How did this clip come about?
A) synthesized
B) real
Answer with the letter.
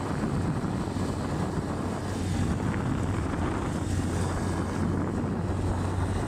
B